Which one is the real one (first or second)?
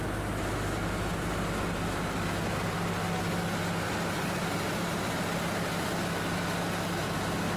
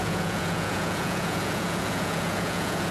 first